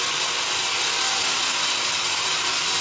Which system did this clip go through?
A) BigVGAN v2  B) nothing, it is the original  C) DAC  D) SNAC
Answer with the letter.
B